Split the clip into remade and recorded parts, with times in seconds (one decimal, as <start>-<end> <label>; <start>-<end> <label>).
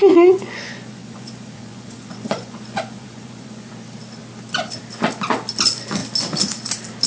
0.0-3.7 remade; 3.7-7.1 recorded